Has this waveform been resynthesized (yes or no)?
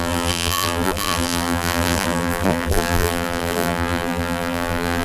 yes